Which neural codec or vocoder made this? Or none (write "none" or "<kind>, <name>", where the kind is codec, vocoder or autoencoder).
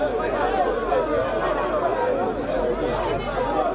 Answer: none